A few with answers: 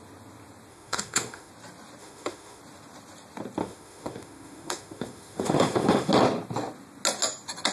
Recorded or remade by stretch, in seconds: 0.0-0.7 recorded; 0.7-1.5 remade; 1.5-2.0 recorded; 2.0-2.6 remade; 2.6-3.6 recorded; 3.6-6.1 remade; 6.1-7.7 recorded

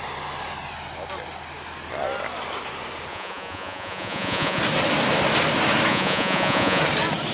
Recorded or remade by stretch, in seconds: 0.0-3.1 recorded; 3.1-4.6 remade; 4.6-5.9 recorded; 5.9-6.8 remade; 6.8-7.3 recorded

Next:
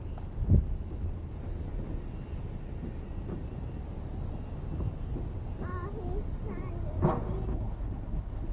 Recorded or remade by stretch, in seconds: 0.0-7.5 recorded; 7.5-8.5 remade

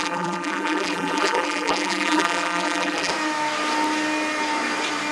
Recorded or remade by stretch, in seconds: 0.0-3.1 remade; 3.1-5.1 recorded

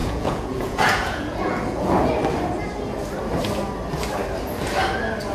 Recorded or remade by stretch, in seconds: 0.0-2.1 remade; 2.1-5.3 recorded

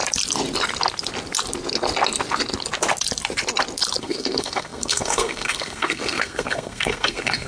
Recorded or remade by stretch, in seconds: 0.0-4.0 recorded; 4.0-7.5 remade

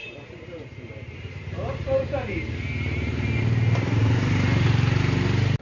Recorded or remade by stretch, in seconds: 0.0-3.4 remade; 3.4-4.0 recorded; 4.0-5.0 remade; 5.0-5.6 recorded